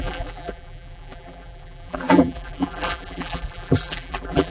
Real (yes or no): no